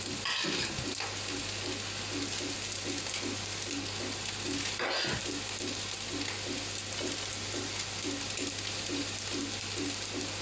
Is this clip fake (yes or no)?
no